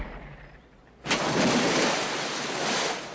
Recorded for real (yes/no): yes